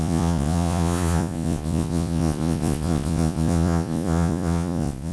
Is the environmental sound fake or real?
fake